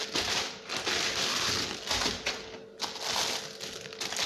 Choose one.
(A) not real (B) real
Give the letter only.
B